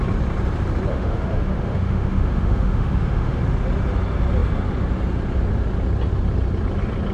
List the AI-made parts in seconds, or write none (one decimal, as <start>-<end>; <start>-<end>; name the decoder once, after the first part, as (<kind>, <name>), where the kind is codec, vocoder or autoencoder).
0.9-3.4 (autoencoder, DAC-VAE)